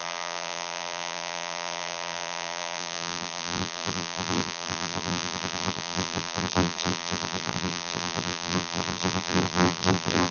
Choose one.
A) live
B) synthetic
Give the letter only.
B